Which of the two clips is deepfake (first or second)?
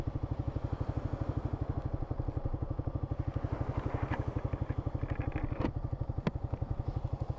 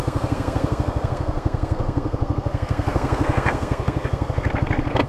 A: second